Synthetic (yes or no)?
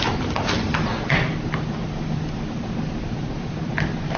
no